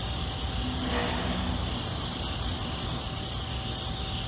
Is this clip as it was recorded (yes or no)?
yes